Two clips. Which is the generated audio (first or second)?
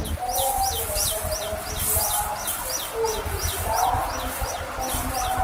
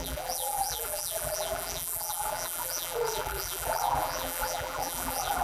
second